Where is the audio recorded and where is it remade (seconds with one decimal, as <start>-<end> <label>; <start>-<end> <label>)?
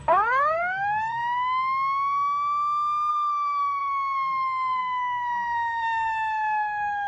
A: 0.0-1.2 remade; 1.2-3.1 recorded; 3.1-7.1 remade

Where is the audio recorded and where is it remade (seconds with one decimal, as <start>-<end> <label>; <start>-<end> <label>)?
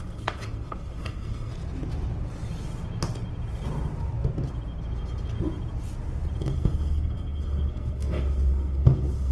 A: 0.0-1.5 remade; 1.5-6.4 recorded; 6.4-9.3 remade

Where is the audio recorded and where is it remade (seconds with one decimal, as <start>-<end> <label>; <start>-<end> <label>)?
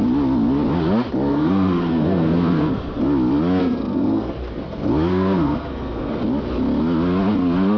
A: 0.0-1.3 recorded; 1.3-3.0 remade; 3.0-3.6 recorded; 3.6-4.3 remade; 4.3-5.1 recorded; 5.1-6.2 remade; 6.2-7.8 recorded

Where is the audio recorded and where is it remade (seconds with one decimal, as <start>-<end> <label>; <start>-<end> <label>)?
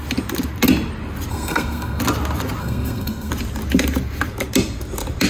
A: 0.0-1.3 recorded; 1.3-2.0 remade; 2.0-2.6 recorded; 2.6-3.3 remade; 3.3-5.3 recorded